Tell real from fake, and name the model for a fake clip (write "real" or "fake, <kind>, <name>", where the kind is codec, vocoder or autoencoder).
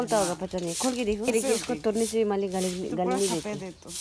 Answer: real